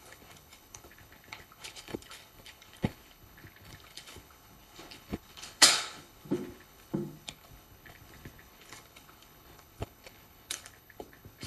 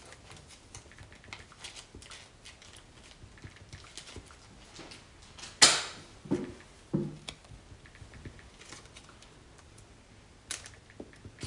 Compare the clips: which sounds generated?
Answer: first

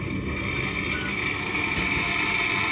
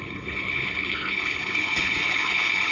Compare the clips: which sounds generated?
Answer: second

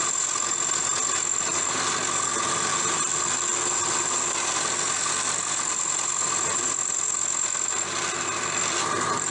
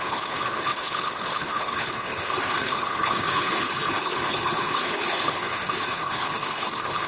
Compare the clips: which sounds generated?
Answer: second